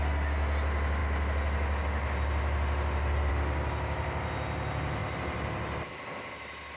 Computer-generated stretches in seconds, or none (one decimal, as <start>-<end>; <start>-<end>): none